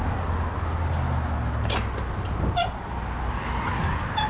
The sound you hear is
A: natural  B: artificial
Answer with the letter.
A